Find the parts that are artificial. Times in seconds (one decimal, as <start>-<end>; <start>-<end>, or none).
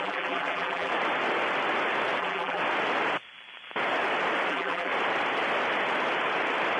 0.0-0.9; 2.2-2.6; 4.5-4.9